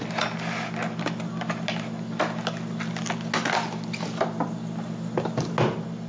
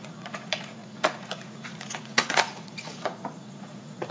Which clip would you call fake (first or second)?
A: second